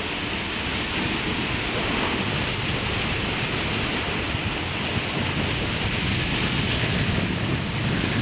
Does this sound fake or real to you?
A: real